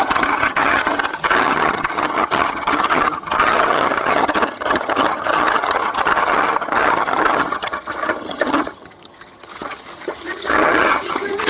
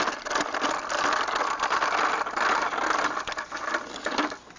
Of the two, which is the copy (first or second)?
first